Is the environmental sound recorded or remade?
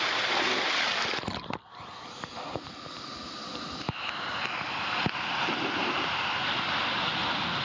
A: recorded